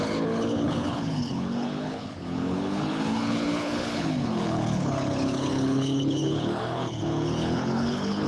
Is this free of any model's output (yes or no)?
no